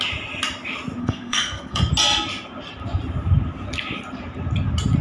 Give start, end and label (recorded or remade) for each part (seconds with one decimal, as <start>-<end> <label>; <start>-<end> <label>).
0.0-1.0 recorded; 1.0-1.9 remade; 1.9-5.0 recorded